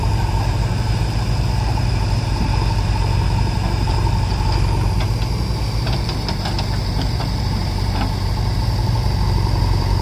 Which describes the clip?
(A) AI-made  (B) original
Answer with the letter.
A